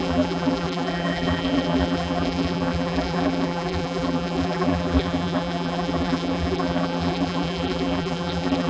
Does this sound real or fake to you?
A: fake